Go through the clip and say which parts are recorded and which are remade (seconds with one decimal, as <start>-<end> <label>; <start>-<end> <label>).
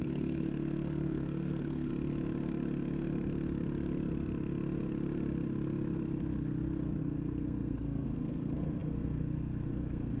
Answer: 0.0-1.9 remade; 1.9-7.0 recorded; 7.0-10.2 remade